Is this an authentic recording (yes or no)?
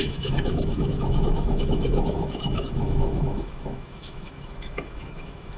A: no